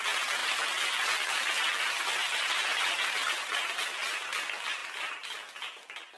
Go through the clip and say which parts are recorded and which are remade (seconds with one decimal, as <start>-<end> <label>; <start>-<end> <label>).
0.0-0.4 recorded; 0.4-2.9 remade; 2.9-4.8 recorded; 4.8-6.2 remade